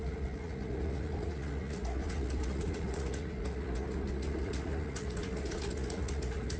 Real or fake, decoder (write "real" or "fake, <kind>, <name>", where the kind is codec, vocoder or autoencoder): fake, vocoder, Vocos